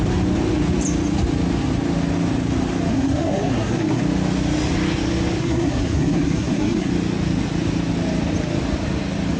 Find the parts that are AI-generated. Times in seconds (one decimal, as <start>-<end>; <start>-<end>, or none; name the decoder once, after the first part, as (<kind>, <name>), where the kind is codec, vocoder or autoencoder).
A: 2.9-4.0 (codec, SNAC); 5.4-6.9